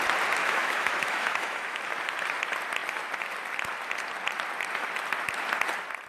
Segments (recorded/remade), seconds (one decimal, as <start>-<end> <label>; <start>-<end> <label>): 0.0-0.4 recorded; 0.4-1.8 remade; 1.8-6.1 recorded